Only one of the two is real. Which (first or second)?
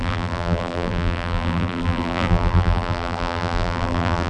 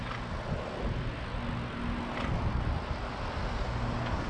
second